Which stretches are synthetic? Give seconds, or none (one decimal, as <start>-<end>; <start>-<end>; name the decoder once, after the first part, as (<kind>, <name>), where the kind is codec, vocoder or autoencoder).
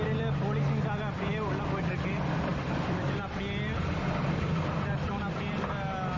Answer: none